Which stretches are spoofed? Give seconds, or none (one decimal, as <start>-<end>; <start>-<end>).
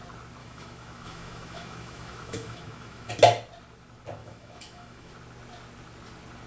0.4-3.1; 4.2-5.1